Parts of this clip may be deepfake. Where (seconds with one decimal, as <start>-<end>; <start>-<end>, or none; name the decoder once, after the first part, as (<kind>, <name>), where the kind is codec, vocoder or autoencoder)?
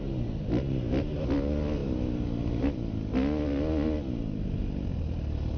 none